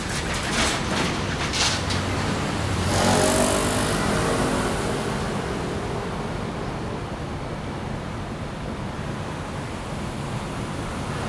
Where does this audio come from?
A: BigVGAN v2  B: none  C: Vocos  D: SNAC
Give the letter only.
B